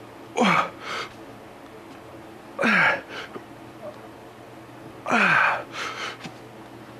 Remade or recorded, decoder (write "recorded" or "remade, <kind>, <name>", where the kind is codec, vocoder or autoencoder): recorded